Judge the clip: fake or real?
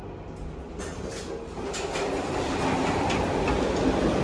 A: real